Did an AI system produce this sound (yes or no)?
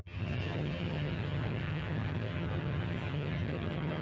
yes